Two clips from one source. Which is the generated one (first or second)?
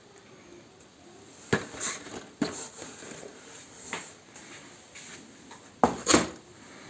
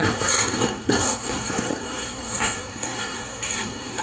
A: second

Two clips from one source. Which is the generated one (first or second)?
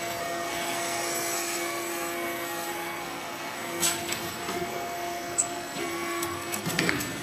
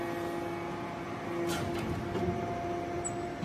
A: first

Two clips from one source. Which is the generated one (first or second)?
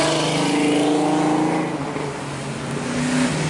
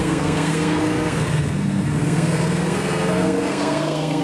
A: second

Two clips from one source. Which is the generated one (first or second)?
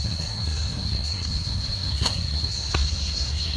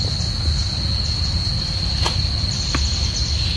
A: first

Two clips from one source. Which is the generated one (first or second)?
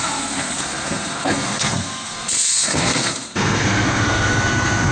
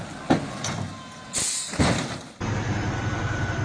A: first